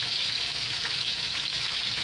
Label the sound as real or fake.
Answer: fake